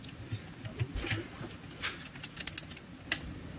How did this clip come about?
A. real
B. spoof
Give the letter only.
A